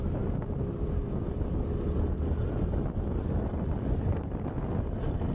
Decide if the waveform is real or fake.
real